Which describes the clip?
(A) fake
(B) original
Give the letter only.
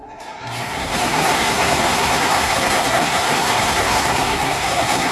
A